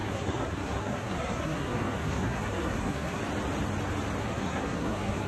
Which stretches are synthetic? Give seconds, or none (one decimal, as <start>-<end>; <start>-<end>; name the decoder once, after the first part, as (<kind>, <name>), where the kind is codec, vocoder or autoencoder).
0.0-3.2 (codec, SNAC); 4.2-5.3